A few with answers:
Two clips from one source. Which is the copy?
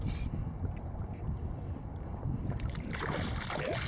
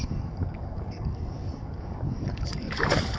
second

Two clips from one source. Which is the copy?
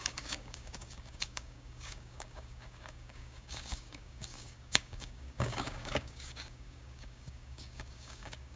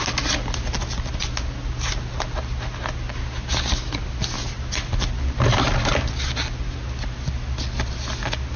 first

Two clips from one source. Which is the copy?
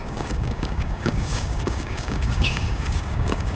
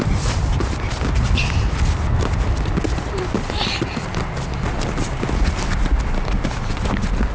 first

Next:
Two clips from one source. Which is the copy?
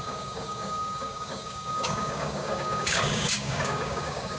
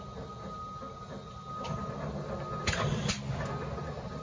first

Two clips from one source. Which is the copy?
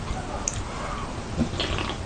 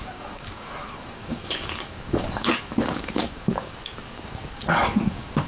second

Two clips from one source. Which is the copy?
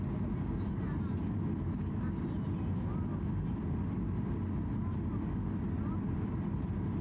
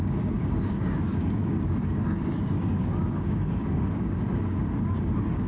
second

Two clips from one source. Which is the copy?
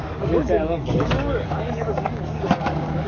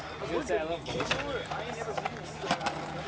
first